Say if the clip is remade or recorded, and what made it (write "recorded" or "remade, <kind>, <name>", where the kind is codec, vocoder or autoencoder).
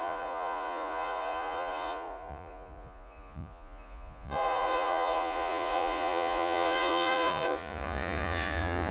remade, vocoder, Vocos